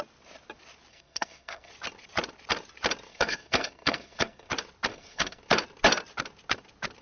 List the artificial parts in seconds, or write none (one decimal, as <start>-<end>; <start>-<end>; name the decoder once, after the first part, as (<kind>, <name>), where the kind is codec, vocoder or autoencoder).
0.9-1.7 (codec, SNAC); 3.1-4.5; 4.9-5.4